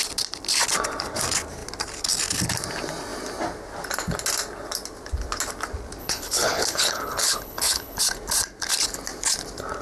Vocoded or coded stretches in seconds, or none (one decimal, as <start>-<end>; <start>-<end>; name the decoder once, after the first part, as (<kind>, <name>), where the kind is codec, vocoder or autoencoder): 6.0-8.0 (codec, HILCodec)